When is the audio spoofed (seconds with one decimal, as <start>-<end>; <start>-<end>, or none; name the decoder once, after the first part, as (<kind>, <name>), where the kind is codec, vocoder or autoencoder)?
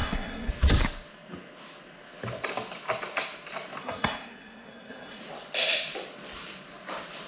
0.0-0.5 (codec, SNAC); 3.8-5.2